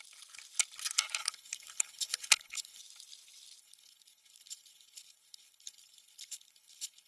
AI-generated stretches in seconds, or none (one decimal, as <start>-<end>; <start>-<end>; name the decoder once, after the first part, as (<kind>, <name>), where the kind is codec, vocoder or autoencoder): 1.2-2.8 (codec, HILCodec); 3.6-7.1